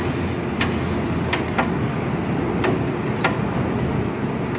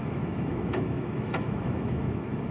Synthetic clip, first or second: second